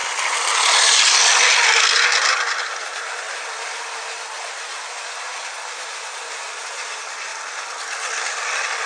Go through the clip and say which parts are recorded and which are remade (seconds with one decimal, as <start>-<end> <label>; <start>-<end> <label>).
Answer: 0.0-8.9 recorded